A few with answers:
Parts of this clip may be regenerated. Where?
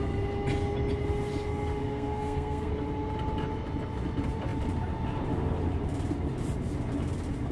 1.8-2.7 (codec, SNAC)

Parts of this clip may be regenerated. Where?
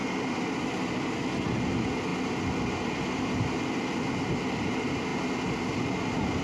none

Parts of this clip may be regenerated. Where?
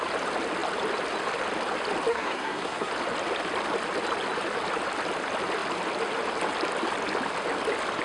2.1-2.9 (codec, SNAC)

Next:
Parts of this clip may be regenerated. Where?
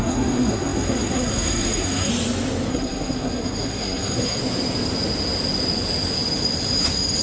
0.0-2.1 (codec, SNAC); 2.7-4.4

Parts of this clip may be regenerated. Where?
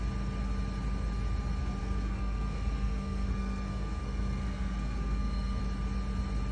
1.8-5.6 (codec, SNAC)